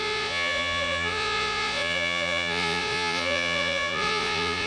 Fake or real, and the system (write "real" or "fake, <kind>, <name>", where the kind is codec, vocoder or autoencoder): fake, vocoder, Vocos